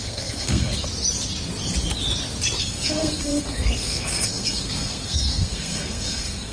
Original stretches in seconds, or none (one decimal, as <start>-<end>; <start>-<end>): 0.7-2.6